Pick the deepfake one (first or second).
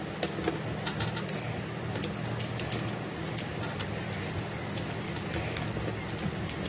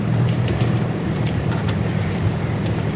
second